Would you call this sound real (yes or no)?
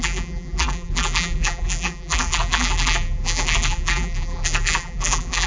no